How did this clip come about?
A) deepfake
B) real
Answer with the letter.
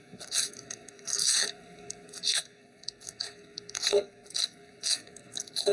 A